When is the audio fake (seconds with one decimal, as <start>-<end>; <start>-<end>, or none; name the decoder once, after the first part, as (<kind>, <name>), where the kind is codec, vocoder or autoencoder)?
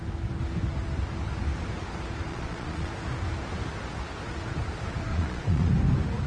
2.3-2.9 (vocoder, Vocos); 5.1-5.7